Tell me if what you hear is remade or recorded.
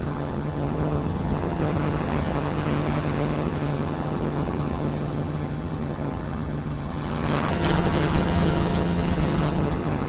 remade